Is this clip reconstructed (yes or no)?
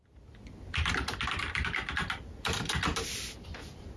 yes